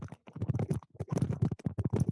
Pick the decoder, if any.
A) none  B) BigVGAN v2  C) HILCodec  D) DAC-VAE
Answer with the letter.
A